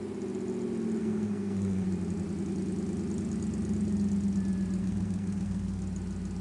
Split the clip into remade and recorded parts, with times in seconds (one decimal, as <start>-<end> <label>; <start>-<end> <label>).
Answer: 0.0-1.0 recorded; 1.0-1.9 remade; 1.9-4.8 recorded; 4.8-5.8 remade; 5.8-6.4 recorded